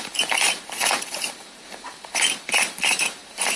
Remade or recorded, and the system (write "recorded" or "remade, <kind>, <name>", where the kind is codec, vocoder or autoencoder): remade, vocoder, BigVGAN v2